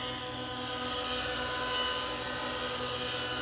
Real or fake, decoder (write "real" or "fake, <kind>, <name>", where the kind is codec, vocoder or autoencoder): real